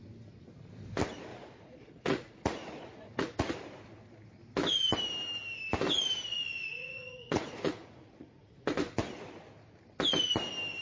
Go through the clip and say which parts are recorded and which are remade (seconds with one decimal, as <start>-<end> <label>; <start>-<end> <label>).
0.0-1.3 recorded; 1.3-3.5 remade; 3.5-6.3 recorded; 6.3-8.7 remade; 8.7-10.8 recorded